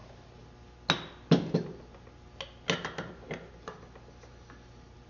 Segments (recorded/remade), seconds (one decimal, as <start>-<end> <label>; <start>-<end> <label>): 0.0-5.1 recorded